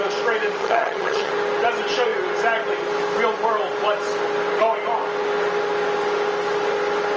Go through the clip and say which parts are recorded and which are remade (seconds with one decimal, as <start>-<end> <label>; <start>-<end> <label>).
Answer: 0.0-0.6 recorded; 0.6-1.3 remade; 1.3-7.2 recorded